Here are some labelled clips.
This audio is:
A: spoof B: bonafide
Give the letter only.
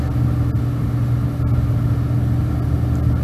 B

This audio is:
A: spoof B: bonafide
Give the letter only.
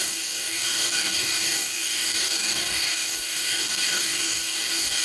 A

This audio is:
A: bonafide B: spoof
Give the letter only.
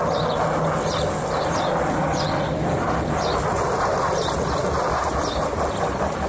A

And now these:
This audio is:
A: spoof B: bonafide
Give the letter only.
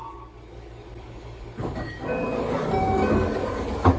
A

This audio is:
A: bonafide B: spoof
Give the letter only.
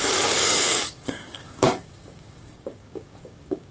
B